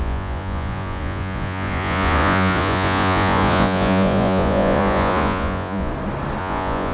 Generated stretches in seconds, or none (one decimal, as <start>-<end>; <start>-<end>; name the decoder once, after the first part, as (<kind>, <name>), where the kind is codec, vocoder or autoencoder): 0.0-5.9 (vocoder, Vocos); 6.4-6.9